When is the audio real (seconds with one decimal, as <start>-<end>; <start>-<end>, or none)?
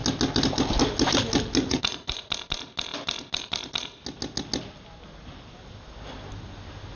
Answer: 0.0-1.6; 2.3-7.0